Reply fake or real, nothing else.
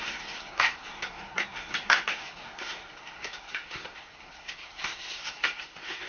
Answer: fake